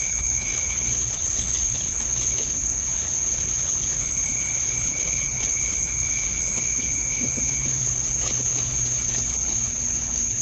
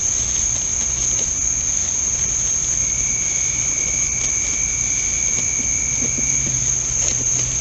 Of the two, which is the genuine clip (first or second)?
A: second